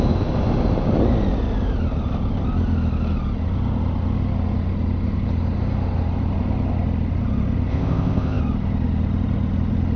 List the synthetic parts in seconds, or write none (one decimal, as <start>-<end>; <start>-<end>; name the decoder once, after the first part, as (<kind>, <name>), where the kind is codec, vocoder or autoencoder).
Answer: 7.7-8.4 (codec, ZipCodec)